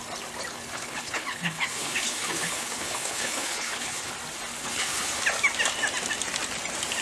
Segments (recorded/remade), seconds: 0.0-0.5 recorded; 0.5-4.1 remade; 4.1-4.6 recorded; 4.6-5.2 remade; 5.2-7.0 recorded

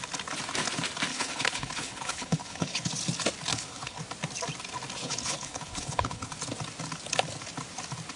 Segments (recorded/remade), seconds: 0.0-1.1 recorded; 1.1-2.9 remade; 2.9-3.5 recorded; 3.5-4.0 remade; 4.0-5.0 recorded; 5.0-6.3 remade; 6.3-8.2 recorded